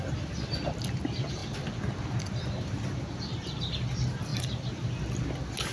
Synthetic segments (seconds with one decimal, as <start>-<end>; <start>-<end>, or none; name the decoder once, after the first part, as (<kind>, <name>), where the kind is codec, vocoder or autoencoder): 4.3-4.9 (vocoder, BigVGAN v2)